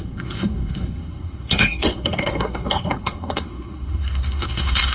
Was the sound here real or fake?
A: fake